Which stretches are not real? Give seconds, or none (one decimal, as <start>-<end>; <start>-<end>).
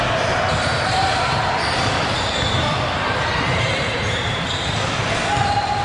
0.7-4.2